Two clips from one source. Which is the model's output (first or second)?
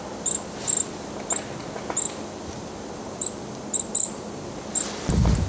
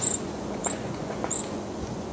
second